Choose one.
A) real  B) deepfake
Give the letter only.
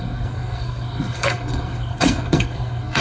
B